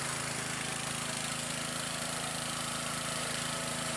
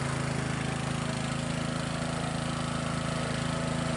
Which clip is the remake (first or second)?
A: first